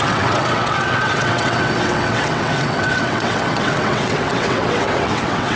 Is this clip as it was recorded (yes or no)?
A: no